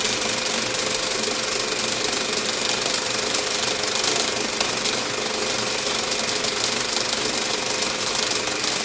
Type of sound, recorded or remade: recorded